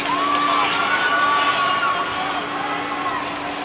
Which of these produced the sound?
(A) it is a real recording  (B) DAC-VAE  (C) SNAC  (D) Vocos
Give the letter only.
A